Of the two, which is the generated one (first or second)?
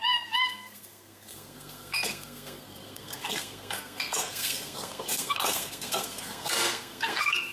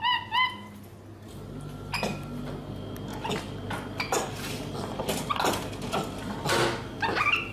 first